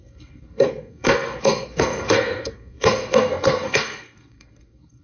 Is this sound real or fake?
fake